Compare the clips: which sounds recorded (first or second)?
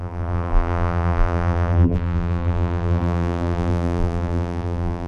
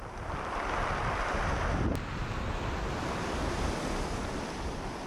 second